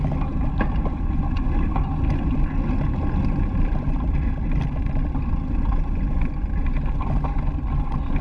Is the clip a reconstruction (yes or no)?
no